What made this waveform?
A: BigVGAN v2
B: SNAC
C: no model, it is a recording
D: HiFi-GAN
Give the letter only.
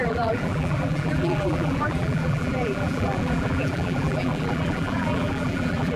A